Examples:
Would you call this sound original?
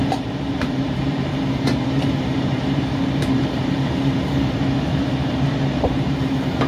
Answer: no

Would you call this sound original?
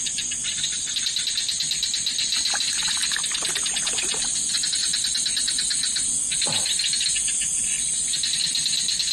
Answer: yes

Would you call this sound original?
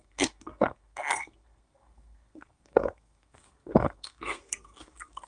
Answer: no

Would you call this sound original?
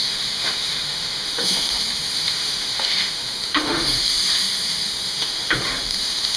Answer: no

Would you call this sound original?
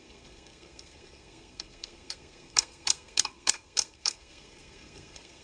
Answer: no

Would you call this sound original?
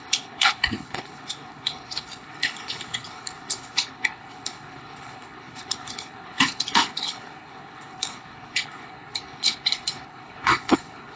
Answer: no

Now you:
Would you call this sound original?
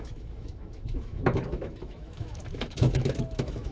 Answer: no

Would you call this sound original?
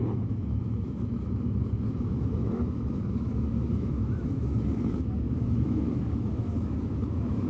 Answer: no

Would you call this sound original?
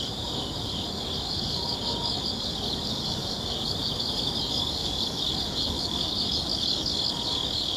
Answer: no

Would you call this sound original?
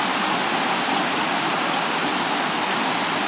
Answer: yes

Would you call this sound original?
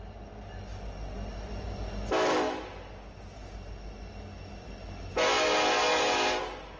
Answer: yes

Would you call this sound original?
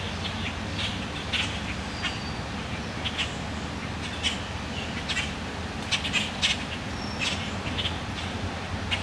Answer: yes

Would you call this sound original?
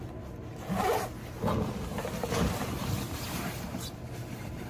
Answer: no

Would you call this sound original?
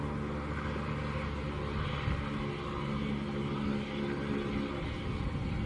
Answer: yes